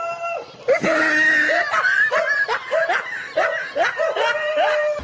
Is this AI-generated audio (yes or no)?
no